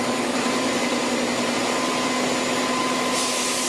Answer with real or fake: real